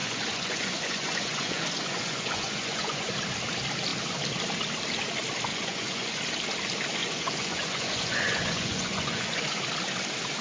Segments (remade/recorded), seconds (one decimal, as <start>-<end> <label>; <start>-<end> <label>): 0.0-3.1 remade; 3.1-5.5 recorded; 5.5-6.2 remade; 6.2-7.0 recorded; 7.0-9.6 remade; 9.6-10.4 recorded